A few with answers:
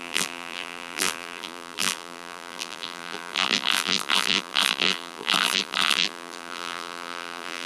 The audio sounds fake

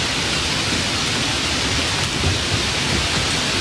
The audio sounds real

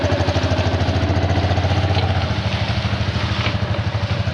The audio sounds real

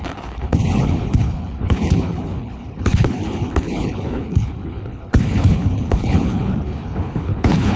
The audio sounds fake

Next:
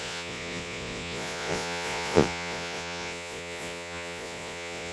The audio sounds fake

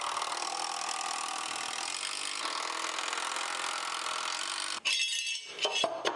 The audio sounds real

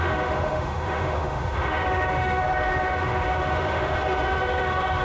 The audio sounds fake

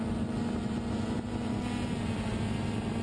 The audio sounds real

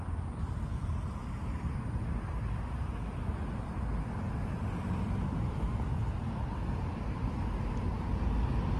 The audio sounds real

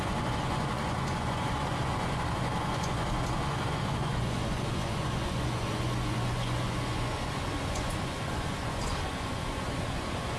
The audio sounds fake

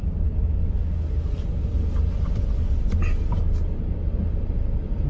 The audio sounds real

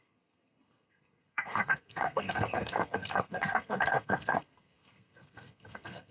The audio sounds fake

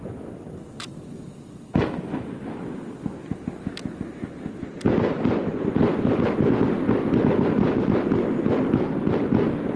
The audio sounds real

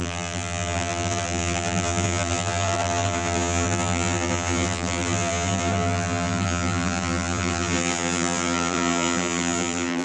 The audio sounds fake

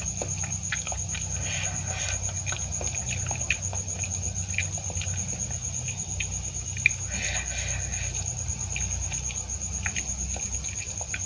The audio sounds real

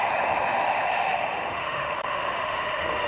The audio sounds fake